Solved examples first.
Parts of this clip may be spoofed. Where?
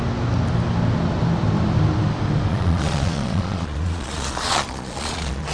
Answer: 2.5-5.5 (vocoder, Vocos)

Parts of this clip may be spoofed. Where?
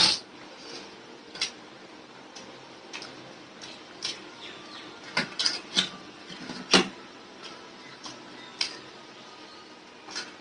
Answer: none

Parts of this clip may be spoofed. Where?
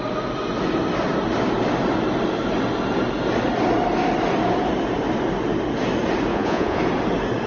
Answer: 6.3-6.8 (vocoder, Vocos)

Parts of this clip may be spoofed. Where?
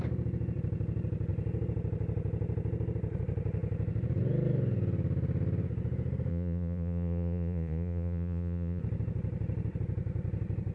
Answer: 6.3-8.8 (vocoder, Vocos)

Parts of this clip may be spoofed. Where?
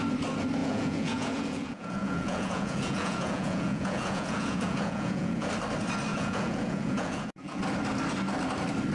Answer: 0.6-5.5 (vocoder, Vocos); 6.1-7.6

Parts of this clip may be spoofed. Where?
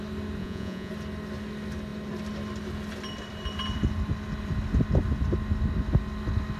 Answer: 0.4-0.9 (vocoder, Vocos)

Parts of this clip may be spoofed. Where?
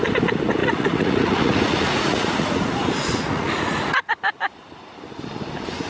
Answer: 0.6-4.1 (vocoder, Vocos)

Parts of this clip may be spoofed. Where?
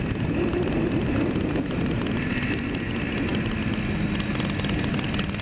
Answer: none